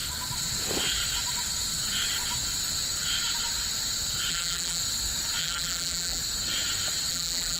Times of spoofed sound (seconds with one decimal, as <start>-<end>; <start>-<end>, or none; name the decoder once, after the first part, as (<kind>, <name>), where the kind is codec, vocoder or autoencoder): 4.3-4.8 (vocoder, BigVGAN v2); 5.4-6.2; 7.1-7.6